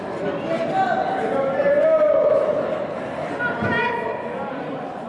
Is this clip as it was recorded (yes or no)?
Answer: yes